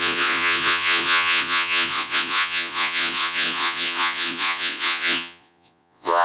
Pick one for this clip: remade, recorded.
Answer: remade